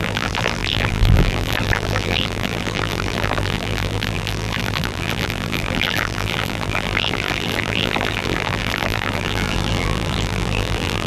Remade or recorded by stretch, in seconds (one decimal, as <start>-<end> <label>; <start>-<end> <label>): 0.0-11.1 remade